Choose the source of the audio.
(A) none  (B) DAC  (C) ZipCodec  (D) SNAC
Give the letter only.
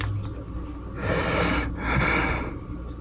A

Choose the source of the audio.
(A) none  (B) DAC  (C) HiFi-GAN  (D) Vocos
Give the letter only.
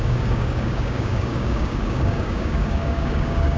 B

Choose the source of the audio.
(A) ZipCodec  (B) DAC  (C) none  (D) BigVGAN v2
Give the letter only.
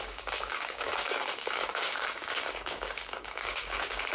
B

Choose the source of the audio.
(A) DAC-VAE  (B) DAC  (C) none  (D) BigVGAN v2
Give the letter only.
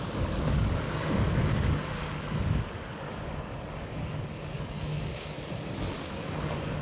B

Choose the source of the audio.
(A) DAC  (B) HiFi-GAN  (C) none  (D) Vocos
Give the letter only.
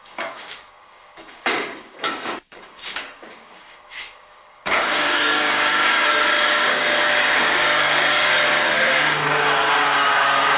A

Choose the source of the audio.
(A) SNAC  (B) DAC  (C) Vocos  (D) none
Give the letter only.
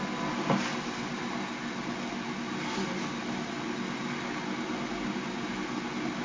D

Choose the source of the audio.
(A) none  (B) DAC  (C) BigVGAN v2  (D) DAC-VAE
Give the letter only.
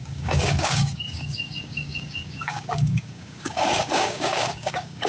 B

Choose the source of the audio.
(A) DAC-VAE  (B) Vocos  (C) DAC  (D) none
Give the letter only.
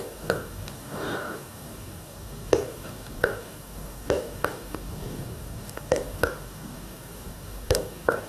C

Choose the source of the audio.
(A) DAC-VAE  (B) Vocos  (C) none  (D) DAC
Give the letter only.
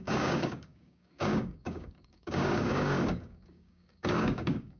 D